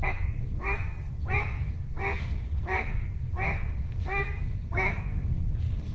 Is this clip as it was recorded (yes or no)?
no